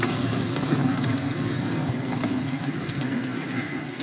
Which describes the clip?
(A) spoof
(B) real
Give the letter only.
A